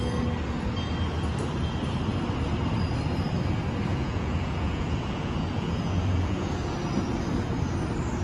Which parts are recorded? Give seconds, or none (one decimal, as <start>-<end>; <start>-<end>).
0.0-3.9; 6.5-8.2